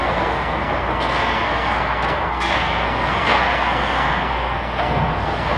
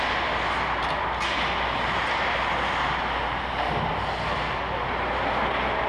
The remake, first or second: first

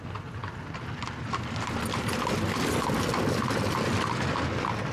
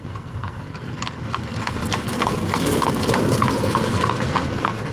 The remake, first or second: second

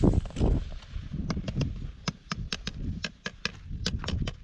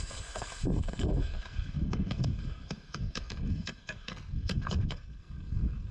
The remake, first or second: second